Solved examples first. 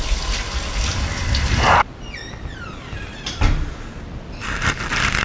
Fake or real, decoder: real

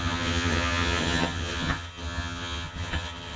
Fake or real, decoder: fake, vocoder, HiFi-GAN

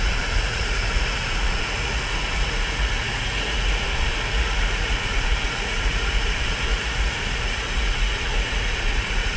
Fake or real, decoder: fake, vocoder, Vocos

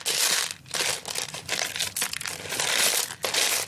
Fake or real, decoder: real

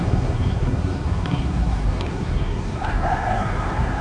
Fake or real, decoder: fake, codec, SNAC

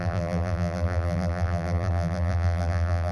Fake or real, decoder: fake, vocoder, BigVGAN v2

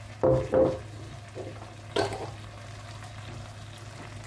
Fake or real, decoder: real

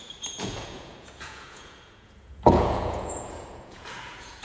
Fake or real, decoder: fake, vocoder, Vocos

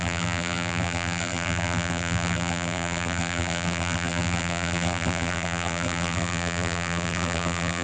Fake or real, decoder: fake, vocoder, BigVGAN v2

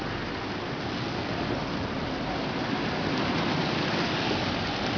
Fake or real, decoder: real